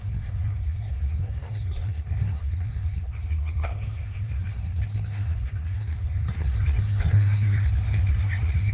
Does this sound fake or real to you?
fake